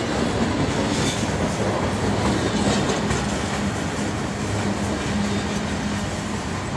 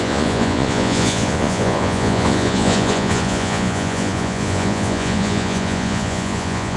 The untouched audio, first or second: first